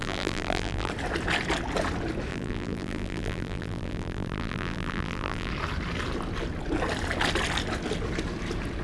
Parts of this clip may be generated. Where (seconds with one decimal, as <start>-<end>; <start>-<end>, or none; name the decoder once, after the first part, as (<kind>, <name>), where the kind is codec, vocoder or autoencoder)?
0.0-0.9 (vocoder, BigVGAN v2); 2.3-5.5